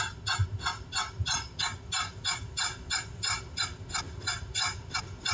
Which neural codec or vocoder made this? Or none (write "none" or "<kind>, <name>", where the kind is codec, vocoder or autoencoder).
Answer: none